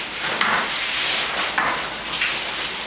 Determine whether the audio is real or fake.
real